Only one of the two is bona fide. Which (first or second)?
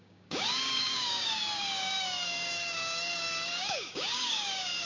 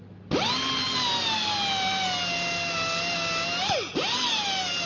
second